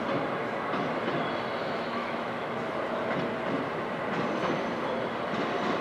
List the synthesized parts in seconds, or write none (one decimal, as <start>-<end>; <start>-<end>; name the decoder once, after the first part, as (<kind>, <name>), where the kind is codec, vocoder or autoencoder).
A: 1.6-2.8 (autoencoder, DAC-VAE)